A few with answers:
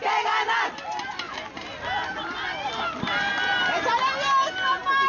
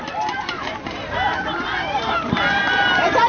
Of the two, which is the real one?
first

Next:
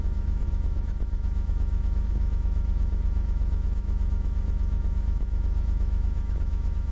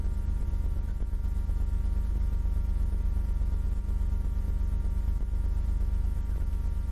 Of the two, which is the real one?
second